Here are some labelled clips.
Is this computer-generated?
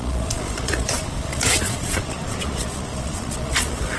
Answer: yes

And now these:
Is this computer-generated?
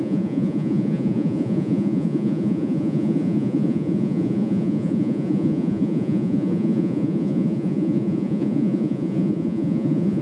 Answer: yes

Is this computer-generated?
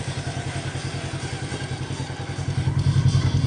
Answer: no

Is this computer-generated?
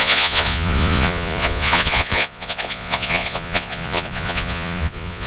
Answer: yes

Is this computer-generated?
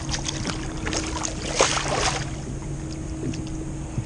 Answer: no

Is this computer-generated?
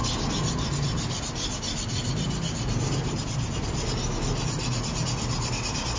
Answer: no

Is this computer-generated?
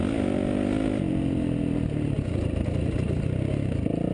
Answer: no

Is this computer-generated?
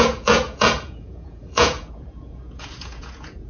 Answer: yes